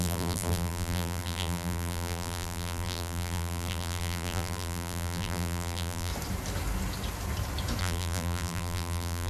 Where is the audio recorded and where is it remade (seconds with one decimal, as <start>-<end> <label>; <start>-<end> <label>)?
0.0-6.1 remade; 6.1-7.8 recorded; 7.8-9.3 remade